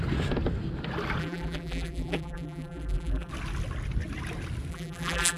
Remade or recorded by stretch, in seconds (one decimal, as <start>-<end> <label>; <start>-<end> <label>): 0.0-1.2 recorded; 1.2-3.3 remade; 3.3-4.7 recorded; 4.7-5.4 remade